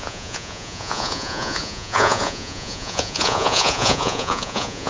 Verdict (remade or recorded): remade